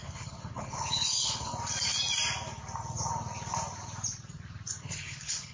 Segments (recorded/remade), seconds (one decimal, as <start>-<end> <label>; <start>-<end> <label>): 0.0-1.5 remade; 1.5-4.8 recorded; 4.8-5.5 remade